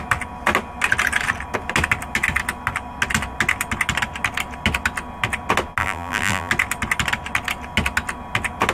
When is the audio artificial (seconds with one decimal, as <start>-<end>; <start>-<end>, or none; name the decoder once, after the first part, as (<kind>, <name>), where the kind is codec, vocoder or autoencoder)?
5.8-6.5 (vocoder, BigVGAN v2)